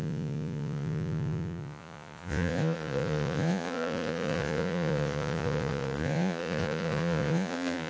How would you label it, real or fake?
fake